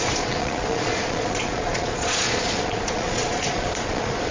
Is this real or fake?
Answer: fake